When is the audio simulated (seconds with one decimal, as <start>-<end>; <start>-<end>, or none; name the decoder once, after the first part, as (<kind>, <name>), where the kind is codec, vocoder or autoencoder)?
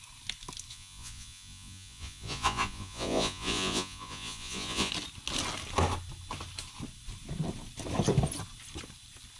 0.7-4.9 (vocoder, Vocos)